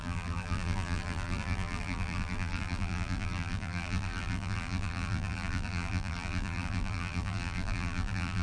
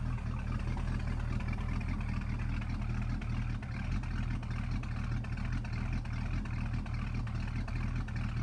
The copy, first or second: first